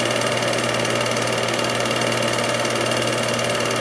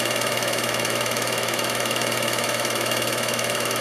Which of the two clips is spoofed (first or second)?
second